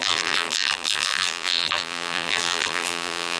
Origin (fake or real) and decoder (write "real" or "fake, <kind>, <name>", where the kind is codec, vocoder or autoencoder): fake, vocoder, BigVGAN v2